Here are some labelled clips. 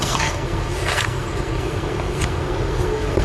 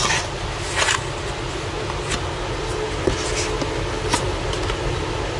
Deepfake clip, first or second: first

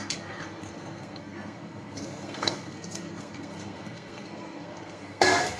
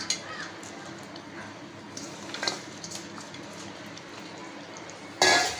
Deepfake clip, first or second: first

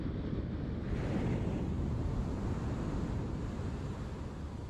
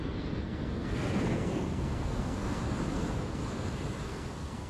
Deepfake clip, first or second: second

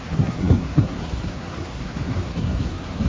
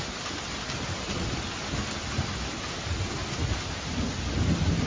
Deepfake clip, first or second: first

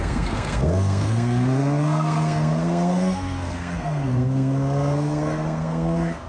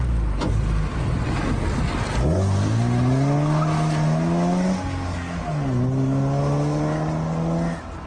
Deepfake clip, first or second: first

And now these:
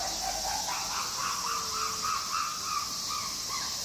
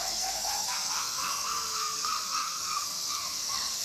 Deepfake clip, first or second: second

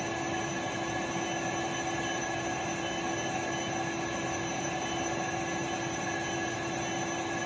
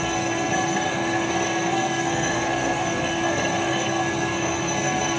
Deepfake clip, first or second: second